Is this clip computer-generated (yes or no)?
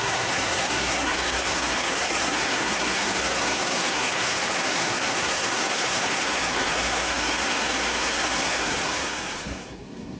yes